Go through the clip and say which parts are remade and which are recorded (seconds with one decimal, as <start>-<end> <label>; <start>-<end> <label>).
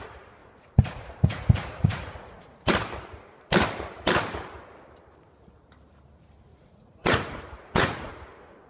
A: 0.0-0.4 recorded; 0.4-2.7 remade; 2.7-6.5 recorded; 6.5-8.7 remade